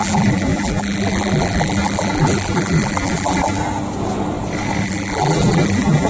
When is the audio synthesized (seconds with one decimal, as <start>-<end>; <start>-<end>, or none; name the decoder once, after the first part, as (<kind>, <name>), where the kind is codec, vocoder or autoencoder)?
0.0-3.6 (vocoder, BigVGAN v2); 4.8-6.1